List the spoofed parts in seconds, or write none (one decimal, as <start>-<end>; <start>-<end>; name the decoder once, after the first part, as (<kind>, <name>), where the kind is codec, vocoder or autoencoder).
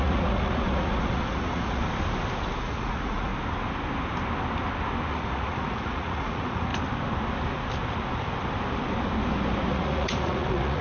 0.0-1.8 (vocoder, Vocos); 2.6-3.3; 5.1-6.7; 9.7-10.8